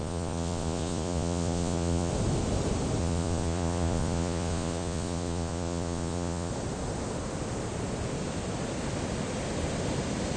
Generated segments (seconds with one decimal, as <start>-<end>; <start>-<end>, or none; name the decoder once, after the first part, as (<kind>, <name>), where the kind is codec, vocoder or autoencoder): 0.0-2.1 (vocoder, Vocos); 3.0-6.5

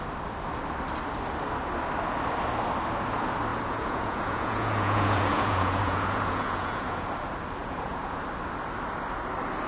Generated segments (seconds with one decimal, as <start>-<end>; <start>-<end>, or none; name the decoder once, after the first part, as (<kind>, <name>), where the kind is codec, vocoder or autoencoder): 3.5-7.1 (vocoder, Vocos); 7.6-8.2

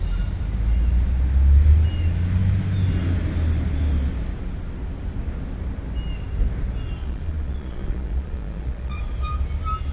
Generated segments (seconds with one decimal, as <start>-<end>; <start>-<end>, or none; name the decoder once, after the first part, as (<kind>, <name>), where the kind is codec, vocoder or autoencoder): 7.0-9.0 (vocoder, Vocos)

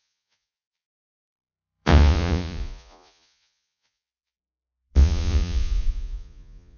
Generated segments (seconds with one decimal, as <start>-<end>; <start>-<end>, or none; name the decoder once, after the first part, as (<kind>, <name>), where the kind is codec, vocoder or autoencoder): 0.0-6.8 (vocoder, Vocos)

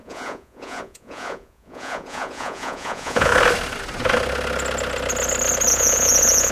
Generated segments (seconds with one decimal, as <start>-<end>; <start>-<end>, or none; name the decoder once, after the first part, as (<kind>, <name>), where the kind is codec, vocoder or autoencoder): 0.0-3.3 (vocoder, Vocos); 5.7-6.5

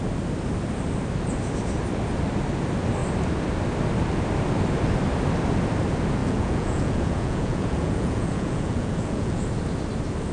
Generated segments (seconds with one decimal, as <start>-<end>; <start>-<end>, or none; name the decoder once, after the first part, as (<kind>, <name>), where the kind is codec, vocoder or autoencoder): 6.2-9.4 (vocoder, Vocos)